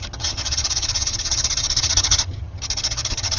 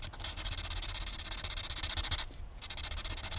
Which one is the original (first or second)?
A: second